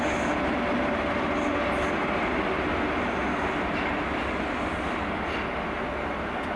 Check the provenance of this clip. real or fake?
real